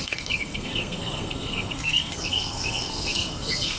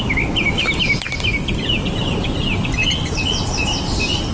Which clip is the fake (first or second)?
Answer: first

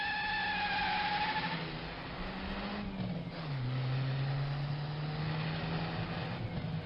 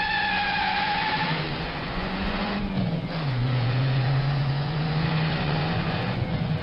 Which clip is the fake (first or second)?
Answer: second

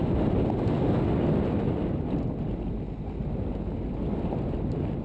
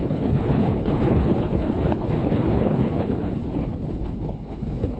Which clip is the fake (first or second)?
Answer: second